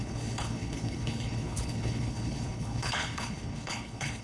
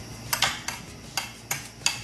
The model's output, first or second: first